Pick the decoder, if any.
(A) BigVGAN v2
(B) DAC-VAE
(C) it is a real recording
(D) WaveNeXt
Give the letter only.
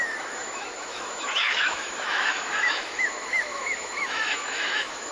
B